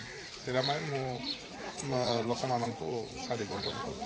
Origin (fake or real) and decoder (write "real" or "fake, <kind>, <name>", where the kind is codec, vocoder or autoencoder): fake, vocoder, Vocos